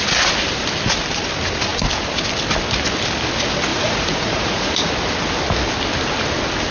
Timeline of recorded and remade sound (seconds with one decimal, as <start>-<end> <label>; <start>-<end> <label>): 0.0-3.7 recorded; 3.7-4.9 remade; 4.9-6.7 recorded